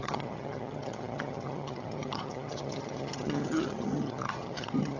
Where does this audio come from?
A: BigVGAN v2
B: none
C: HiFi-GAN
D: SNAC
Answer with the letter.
C